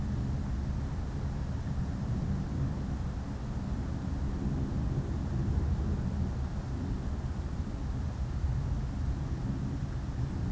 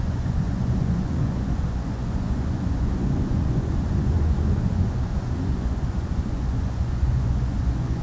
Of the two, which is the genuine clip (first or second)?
first